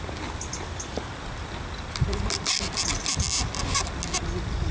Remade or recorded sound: recorded